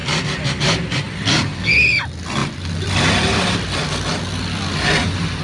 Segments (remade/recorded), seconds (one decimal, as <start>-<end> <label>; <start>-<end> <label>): 0.0-1.5 remade; 1.5-2.4 recorded; 2.4-3.9 remade; 3.9-5.4 recorded

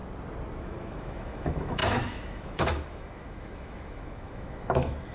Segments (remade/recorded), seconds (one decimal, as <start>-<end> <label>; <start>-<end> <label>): 0.0-0.6 recorded; 0.6-5.1 remade